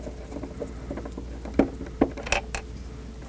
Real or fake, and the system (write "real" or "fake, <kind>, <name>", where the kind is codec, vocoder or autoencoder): real